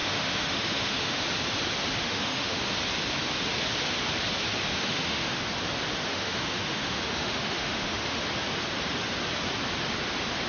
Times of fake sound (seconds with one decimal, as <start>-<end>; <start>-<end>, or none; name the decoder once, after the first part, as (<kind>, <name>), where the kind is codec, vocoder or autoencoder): 0.0-1.2 (autoencoder, DAC-VAE); 2.0-2.6; 4.7-5.4; 6.1-8.2